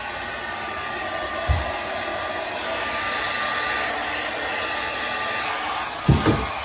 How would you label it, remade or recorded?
recorded